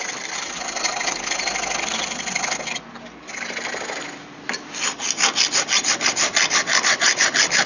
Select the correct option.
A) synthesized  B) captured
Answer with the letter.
B